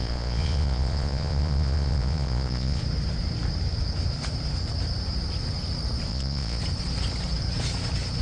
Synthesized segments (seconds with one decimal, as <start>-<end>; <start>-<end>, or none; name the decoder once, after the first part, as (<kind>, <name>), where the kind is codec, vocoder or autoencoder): 0.0-2.8 (vocoder, Vocos); 6.1-6.6